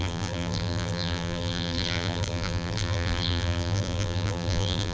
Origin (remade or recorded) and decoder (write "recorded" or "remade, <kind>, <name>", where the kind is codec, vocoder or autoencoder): remade, vocoder, BigVGAN v2